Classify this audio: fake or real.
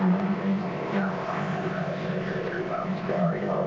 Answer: fake